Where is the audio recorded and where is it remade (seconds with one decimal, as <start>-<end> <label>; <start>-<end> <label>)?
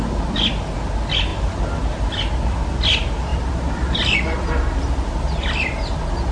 0.0-6.3 recorded